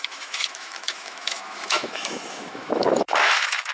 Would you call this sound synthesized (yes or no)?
yes